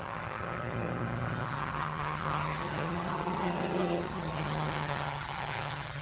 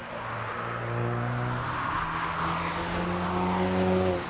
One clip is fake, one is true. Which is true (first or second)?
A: second